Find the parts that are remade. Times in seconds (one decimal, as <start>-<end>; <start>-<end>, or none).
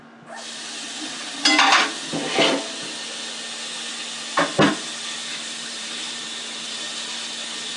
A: 5.3-6.8